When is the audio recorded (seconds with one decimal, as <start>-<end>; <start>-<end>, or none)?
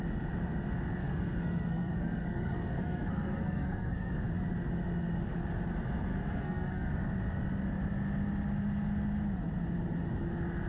0.0-1.0; 4.1-6.1; 6.9-10.7